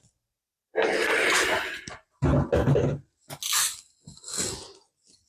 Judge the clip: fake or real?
real